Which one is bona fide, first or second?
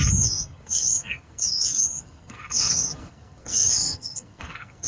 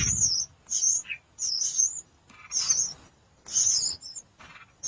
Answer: second